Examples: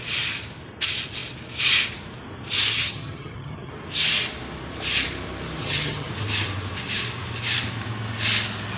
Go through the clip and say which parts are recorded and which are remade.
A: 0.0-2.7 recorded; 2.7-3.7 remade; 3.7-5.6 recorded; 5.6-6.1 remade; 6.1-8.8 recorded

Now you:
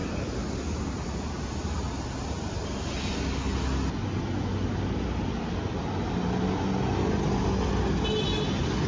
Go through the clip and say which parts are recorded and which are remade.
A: 0.0-8.9 recorded

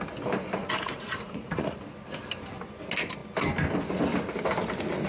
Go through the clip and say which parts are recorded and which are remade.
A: 0.0-0.6 recorded; 0.6-1.8 remade; 1.8-5.1 recorded

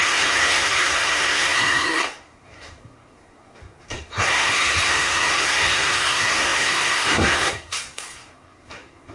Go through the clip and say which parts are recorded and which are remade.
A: 0.0-9.1 remade

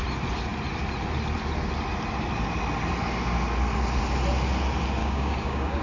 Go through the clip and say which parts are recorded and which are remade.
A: 0.0-5.0 recorded; 5.0-5.8 remade

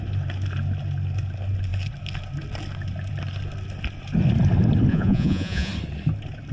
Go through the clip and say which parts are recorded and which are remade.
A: 0.0-4.9 recorded; 4.9-5.7 remade; 5.7-6.5 recorded

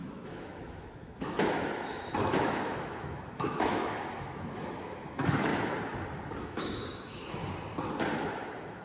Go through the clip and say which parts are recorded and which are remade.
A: 0.0-5.5 remade; 5.5-6.4 recorded; 6.4-7.4 remade; 7.4-8.3 recorded; 8.3-8.8 remade

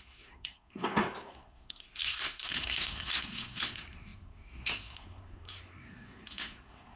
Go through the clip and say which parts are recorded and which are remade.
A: 0.0-7.0 remade